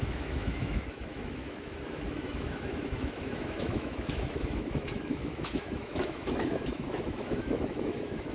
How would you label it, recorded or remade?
remade